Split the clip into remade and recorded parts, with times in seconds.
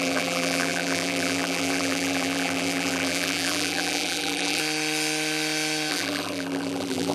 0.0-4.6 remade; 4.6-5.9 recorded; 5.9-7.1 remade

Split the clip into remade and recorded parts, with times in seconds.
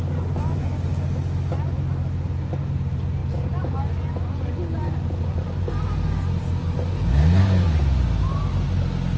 0.0-9.2 recorded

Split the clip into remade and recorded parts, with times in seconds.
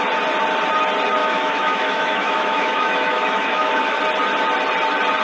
0.0-1.2 recorded; 1.2-4.0 remade; 4.0-5.2 recorded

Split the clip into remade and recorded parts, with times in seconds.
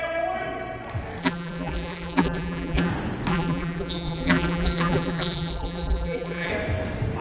0.0-1.2 recorded; 1.2-2.9 remade; 2.9-3.3 recorded; 3.3-6.5 remade; 6.5-7.2 recorded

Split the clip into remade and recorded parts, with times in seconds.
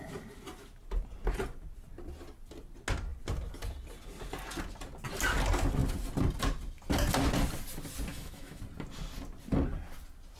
0.0-8.1 recorded; 8.1-8.6 remade; 8.6-10.4 recorded